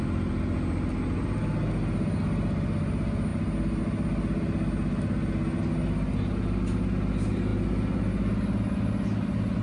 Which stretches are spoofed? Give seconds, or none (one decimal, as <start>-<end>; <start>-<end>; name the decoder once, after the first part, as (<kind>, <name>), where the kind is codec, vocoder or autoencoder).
none